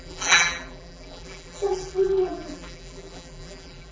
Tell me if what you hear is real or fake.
fake